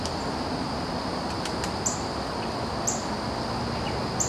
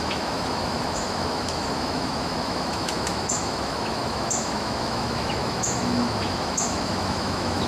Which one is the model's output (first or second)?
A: second